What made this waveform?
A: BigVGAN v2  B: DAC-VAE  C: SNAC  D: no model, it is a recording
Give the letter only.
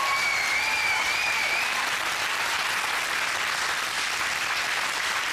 D